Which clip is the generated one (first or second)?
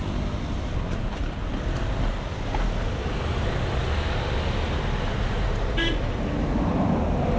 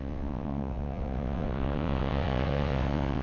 second